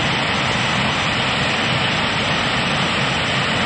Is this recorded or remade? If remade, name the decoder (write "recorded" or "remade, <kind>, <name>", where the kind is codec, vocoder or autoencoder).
recorded